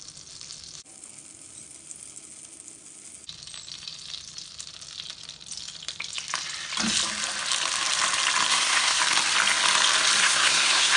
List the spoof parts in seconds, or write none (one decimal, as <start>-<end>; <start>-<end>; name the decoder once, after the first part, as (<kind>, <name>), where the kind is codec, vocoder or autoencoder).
8.5-9.0 (codec, SNAC); 10.2-11.0